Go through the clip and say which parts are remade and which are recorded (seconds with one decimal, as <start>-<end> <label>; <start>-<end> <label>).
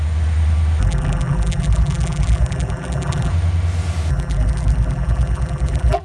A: 0.0-0.8 recorded; 0.8-3.3 remade; 3.3-4.1 recorded; 4.1-6.0 remade